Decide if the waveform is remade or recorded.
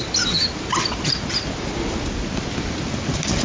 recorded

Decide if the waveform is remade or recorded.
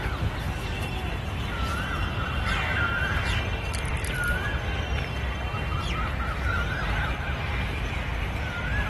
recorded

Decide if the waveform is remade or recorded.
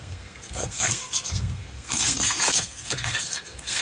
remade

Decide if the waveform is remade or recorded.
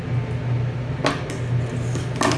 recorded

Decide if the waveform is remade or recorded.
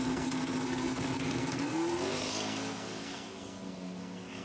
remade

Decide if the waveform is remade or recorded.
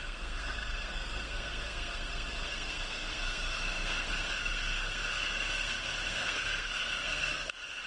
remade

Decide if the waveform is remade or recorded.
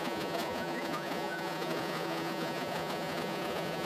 remade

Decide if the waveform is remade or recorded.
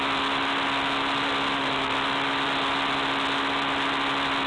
recorded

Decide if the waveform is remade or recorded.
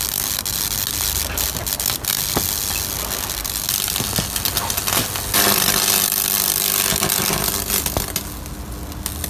recorded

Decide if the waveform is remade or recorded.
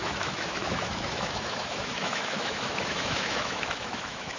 remade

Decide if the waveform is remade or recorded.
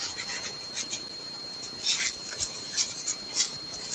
recorded